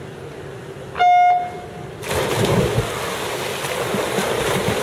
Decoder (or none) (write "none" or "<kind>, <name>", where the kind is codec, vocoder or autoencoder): none